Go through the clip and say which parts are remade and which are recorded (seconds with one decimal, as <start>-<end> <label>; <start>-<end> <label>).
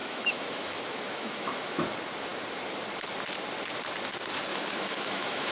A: 0.0-1.8 remade; 1.8-4.5 recorded; 4.5-5.5 remade